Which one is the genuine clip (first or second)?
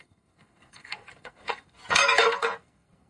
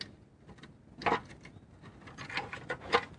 second